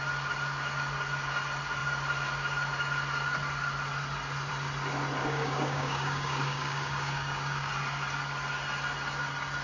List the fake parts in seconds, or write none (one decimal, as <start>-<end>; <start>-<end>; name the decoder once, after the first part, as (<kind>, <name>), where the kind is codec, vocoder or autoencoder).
5.2-7.7 (codec, DAC)